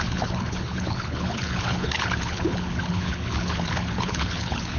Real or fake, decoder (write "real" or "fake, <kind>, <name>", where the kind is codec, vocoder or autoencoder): fake, codec, HILCodec